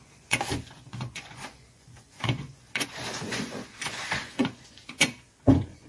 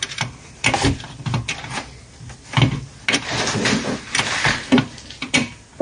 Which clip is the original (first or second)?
second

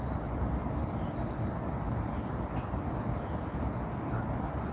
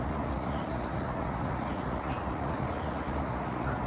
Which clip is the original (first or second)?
first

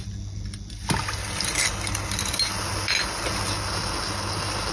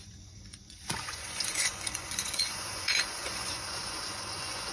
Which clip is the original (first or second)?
first